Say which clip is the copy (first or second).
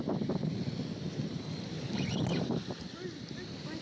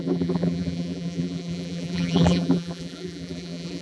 second